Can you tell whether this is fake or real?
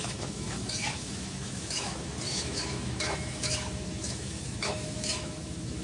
fake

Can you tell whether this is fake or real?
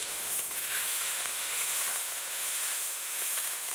fake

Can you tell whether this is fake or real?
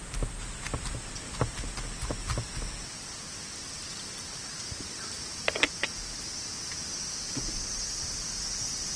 real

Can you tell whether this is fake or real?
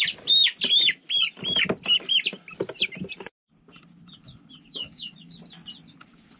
real